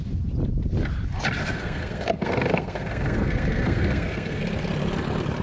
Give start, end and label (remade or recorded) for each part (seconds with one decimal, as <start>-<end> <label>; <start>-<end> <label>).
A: 0.0-1.4 recorded; 1.4-4.4 remade; 4.4-5.4 recorded

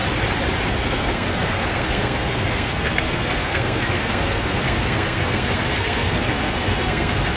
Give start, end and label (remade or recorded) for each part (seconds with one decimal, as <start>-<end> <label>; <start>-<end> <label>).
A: 0.0-0.7 recorded; 0.7-7.4 remade

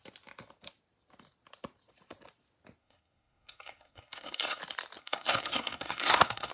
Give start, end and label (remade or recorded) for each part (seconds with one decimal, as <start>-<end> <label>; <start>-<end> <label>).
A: 0.0-2.8 recorded; 2.8-4.6 remade; 4.6-5.0 recorded; 5.0-6.5 remade

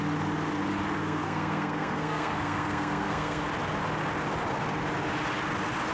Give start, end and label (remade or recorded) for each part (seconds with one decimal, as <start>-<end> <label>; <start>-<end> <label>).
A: 0.0-1.0 recorded; 1.0-3.4 remade; 3.4-5.9 recorded

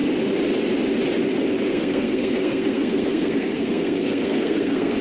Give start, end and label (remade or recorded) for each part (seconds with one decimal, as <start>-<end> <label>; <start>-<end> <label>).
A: 0.0-1.7 recorded; 1.7-5.0 remade

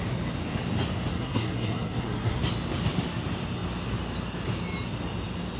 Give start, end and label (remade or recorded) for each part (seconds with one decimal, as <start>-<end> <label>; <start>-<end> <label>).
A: 0.0-1.1 recorded; 1.1-2.4 remade; 2.4-5.6 recorded

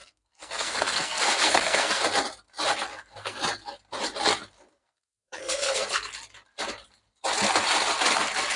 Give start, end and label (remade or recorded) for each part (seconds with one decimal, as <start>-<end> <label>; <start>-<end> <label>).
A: 0.0-2.0 remade; 2.0-2.9 recorded; 2.9-3.4 remade; 3.4-4.8 recorded; 4.8-6.1 remade; 6.1-8.6 recorded

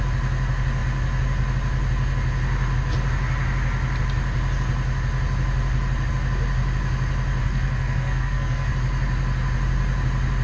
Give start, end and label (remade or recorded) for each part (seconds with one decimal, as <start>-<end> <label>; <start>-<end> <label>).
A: 0.0-7.4 recorded; 7.4-8.7 remade; 8.7-10.4 recorded